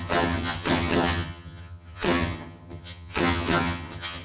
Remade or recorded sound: remade